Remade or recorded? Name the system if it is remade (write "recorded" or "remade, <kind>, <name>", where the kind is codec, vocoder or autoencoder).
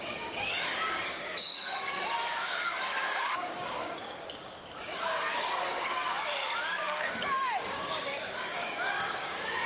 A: remade, codec, DAC